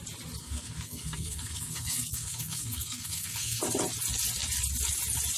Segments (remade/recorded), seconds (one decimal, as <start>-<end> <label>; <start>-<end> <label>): 0.0-0.4 recorded; 0.4-3.6 remade; 3.6-5.4 recorded